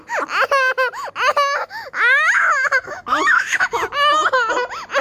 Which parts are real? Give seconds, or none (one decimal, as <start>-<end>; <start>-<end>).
0.0-1.3; 3.7-5.0